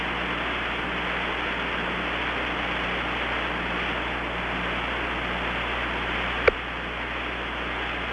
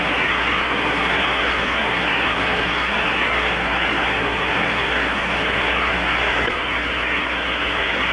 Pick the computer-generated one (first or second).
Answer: second